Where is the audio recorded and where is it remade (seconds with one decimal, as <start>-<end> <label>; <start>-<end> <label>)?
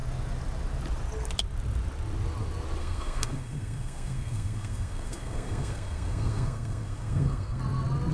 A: 0.0-2.8 recorded; 2.8-7.6 remade; 7.6-8.1 recorded